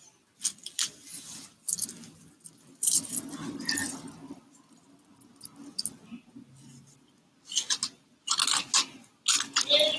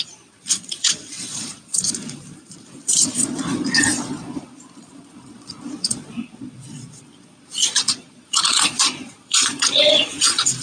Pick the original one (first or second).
first